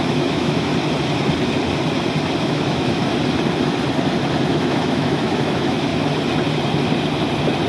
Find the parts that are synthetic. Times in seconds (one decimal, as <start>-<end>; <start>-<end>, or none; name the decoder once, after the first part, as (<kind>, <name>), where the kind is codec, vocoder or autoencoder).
0.0-0.7 (autoencoder, DAC-VAE); 2.4-3.0; 4.5-5.9